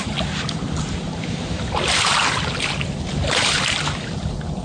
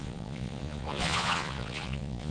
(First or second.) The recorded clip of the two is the first